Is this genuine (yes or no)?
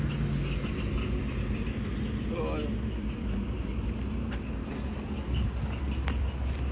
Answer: yes